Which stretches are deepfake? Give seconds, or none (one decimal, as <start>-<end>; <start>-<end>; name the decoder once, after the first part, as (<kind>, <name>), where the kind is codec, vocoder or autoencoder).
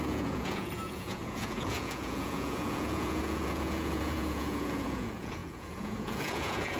0.0-6.8 (vocoder, Vocos)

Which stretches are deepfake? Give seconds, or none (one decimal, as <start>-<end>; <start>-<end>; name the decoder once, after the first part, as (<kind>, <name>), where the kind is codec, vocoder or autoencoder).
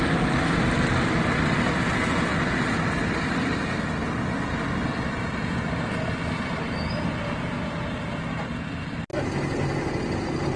none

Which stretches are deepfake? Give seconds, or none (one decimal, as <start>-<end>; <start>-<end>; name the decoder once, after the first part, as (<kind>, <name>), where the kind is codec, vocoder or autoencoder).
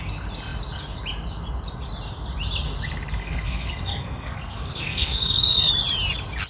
3.2-5.7 (codec, SNAC)